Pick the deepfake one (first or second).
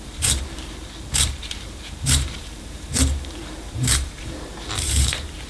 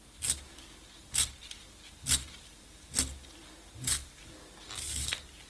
first